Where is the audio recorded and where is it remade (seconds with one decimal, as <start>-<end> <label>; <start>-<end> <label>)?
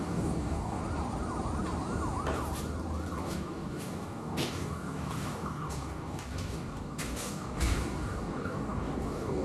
0.0-0.8 remade; 0.8-3.2 recorded; 3.2-9.4 remade